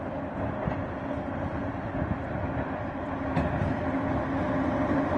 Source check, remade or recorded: recorded